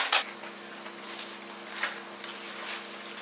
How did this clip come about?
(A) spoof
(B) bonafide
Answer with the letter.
B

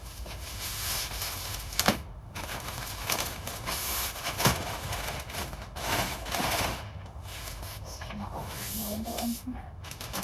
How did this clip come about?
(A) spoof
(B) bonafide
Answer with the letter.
A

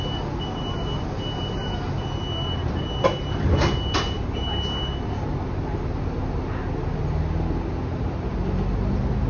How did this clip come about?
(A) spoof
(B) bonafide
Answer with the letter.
B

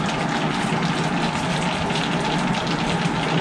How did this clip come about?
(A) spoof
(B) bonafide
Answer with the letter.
B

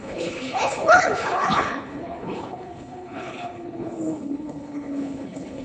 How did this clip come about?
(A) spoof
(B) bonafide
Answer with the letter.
A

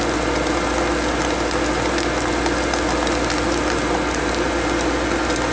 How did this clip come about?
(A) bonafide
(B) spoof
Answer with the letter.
A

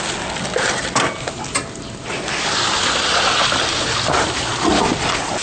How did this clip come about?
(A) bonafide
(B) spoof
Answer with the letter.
A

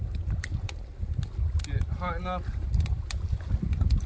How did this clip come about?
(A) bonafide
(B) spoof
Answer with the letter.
A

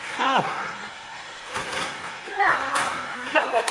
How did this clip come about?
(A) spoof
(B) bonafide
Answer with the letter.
A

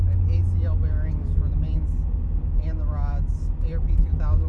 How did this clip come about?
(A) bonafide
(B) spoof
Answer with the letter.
A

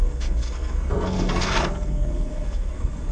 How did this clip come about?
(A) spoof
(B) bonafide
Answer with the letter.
A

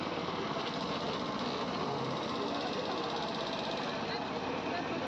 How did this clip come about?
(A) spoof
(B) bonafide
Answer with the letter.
B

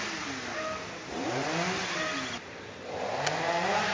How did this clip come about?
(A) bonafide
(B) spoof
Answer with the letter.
A